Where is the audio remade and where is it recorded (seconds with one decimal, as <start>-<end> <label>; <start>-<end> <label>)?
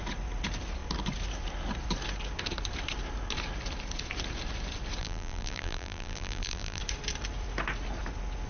0.0-5.0 recorded; 5.0-6.8 remade; 6.8-8.5 recorded